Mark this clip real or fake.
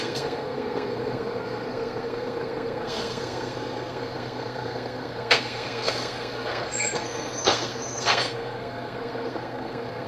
fake